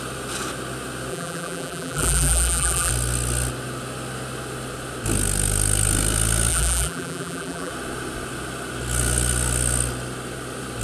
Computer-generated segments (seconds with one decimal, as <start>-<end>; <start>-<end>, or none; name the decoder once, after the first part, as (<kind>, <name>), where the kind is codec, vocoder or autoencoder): 1.1-2.9 (vocoder, BigVGAN v2); 6.5-7.7